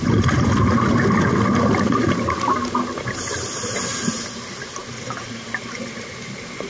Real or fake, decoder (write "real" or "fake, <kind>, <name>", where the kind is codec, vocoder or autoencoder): real